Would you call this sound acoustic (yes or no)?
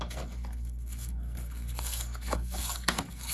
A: no